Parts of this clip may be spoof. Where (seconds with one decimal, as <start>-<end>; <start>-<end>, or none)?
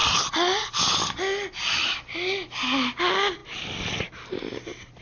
none